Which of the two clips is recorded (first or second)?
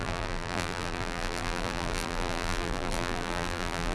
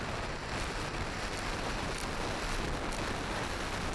second